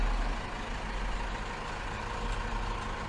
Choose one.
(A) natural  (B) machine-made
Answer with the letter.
A